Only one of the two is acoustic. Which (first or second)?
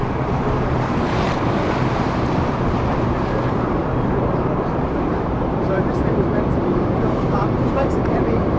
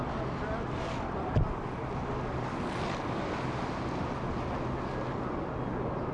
second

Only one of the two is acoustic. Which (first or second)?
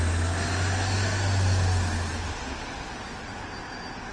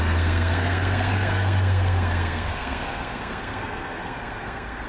first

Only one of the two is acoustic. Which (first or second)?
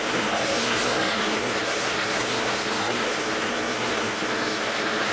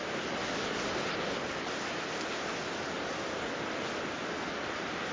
second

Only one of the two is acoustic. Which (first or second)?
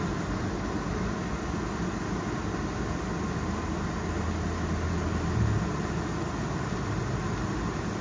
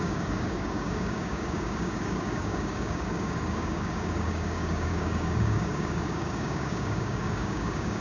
first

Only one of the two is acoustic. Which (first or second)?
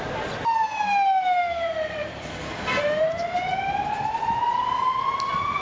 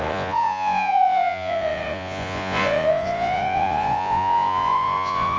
first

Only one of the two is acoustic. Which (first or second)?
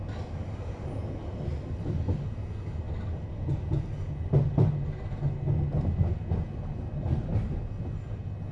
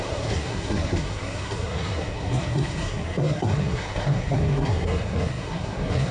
first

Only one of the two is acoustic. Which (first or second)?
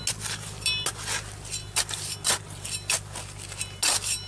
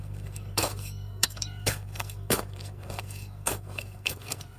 first